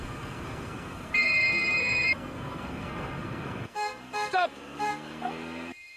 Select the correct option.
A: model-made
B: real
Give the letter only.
A